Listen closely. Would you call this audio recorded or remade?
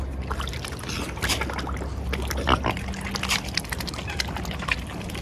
recorded